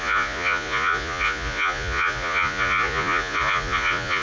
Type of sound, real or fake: fake